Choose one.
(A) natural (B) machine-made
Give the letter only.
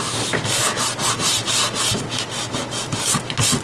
A